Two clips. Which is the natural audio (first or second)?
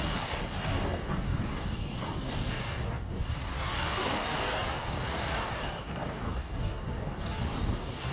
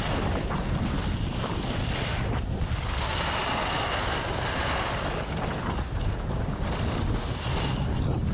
second